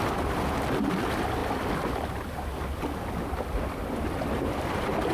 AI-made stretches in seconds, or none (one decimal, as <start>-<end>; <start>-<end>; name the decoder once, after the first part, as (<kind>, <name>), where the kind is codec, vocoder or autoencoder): none